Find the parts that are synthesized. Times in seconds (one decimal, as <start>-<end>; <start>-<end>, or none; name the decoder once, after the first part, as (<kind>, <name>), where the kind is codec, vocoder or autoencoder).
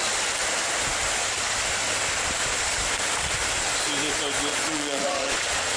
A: 4.5-5.8 (vocoder, Vocos)